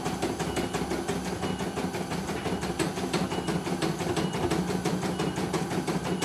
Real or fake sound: real